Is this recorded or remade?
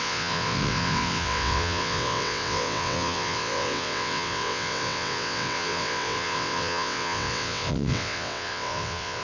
remade